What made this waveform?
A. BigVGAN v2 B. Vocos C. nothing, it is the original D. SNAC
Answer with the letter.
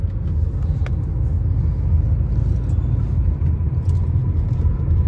C